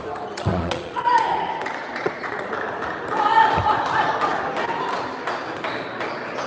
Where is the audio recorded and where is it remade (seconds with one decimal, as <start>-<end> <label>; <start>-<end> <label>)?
0.0-0.5 recorded; 0.5-1.2 remade; 1.2-1.8 recorded; 1.8-2.5 remade; 2.5-6.5 recorded